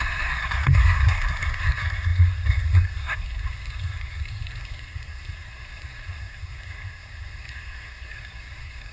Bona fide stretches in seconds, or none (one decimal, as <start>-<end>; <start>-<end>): none